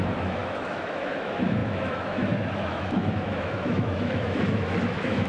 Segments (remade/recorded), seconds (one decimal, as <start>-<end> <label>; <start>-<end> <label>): 0.0-5.3 remade